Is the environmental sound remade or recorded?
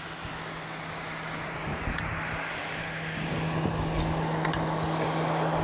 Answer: recorded